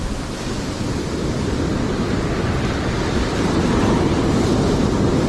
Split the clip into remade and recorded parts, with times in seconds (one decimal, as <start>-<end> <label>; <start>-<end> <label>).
0.0-0.9 recorded; 0.9-4.1 remade; 4.1-5.3 recorded